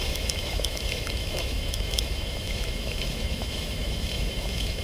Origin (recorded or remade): remade